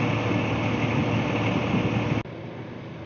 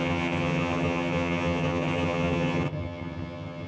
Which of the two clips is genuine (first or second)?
first